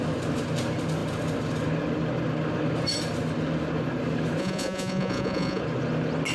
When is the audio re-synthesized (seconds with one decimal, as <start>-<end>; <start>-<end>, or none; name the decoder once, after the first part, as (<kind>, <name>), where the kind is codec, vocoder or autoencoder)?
4.4-5.6 (vocoder, Vocos)